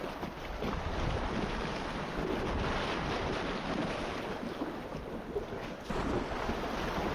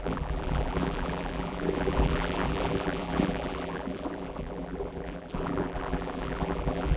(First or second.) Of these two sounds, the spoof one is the second